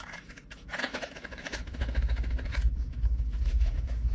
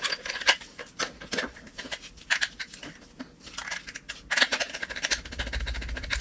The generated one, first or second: first